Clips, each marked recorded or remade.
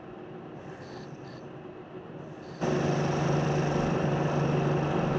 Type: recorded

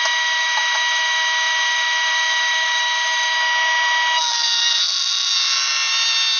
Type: recorded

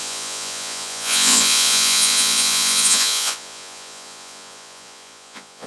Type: remade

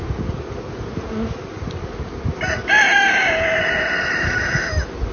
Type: recorded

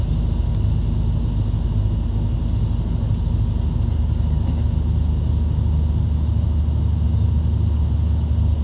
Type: recorded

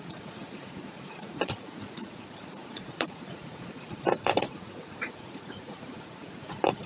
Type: remade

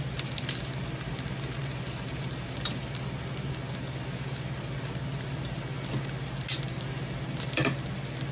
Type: recorded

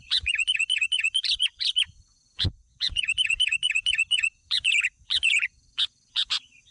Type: remade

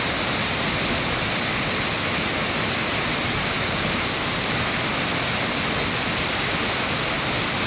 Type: recorded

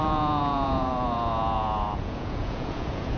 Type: remade